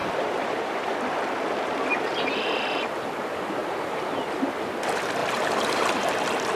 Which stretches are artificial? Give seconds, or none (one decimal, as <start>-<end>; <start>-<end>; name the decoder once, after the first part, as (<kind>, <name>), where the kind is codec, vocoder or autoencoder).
0.0-0.9 (vocoder, BigVGAN v2); 3.6-4.2; 5.2-5.9